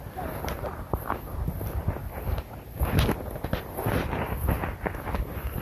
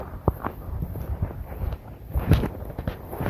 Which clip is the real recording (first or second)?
first